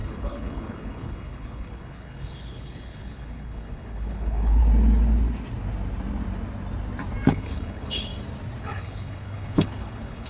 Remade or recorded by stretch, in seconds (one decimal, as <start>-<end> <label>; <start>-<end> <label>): 0.0-4.6 remade; 4.6-7.3 recorded; 7.3-8.1 remade; 8.1-8.6 recorded; 8.6-10.3 remade